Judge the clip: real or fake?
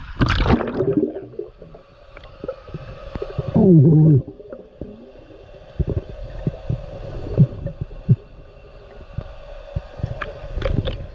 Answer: real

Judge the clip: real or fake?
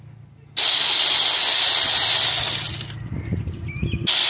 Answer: real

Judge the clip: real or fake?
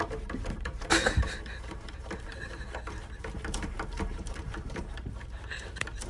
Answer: fake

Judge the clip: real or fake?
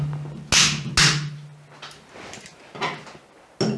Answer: real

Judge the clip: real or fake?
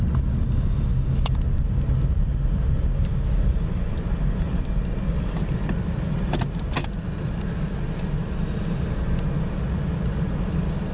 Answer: real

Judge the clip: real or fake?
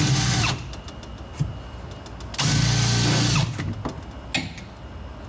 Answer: real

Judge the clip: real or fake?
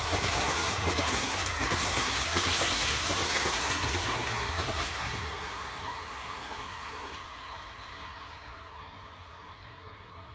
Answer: fake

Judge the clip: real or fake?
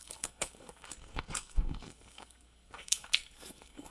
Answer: fake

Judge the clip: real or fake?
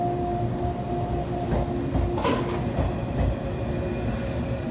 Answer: real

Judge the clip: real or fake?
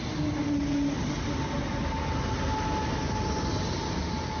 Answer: real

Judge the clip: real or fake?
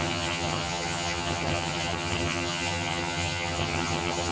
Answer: fake